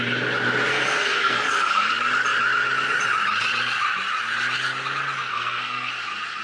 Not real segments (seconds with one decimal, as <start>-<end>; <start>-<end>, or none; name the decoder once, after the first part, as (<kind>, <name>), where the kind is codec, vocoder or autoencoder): 0.7-1.9 (codec, SNAC); 5.3-5.9